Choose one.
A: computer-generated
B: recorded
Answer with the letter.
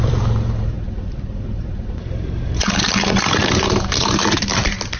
A